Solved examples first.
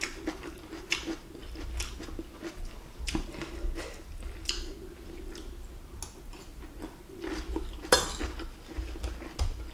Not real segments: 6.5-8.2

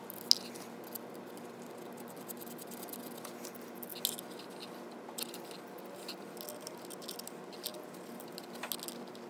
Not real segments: 7.7-8.6

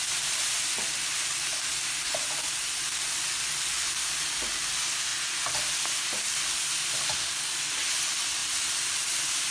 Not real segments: none

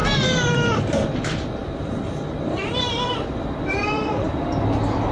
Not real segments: 0.0-1.2; 1.6-4.4

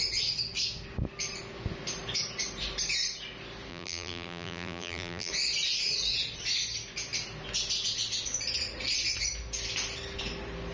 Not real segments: 3.7-5.3

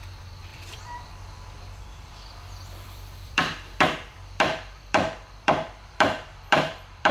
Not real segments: 0.0-7.1